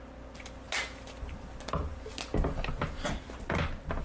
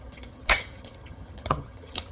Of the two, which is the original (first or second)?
first